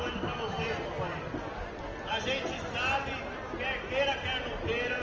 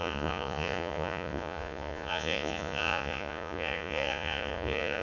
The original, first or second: first